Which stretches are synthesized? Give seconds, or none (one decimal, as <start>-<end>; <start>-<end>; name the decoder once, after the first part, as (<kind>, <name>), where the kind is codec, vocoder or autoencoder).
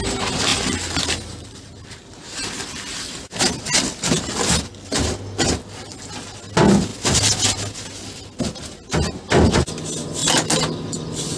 10.2-11.4 (vocoder, BigVGAN v2)